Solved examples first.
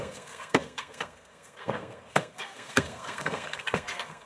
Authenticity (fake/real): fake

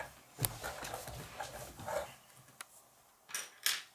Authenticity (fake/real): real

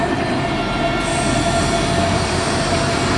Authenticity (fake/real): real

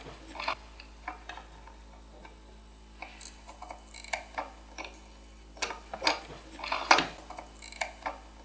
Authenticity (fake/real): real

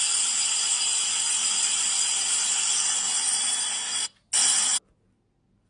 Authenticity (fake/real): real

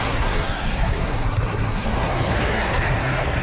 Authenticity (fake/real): fake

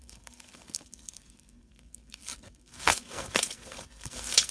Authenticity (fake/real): fake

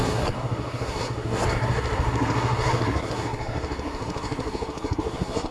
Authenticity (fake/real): fake